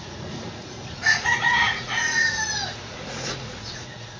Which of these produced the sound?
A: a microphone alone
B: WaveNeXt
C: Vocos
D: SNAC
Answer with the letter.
C